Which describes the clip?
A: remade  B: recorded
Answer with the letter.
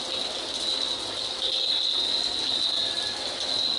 B